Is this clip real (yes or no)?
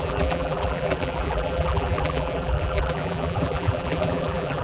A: no